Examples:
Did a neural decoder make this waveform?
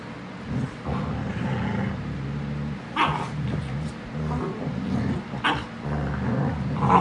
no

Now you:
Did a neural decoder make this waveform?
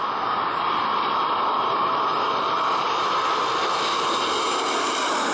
no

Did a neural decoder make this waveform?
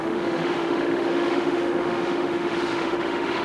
yes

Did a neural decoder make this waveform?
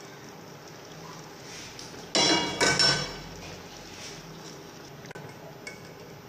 no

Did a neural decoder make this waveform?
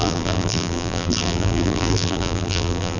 yes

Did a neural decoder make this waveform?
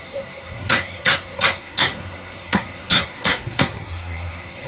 yes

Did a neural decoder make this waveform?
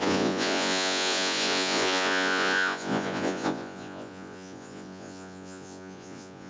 yes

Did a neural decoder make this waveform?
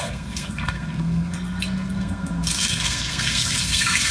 yes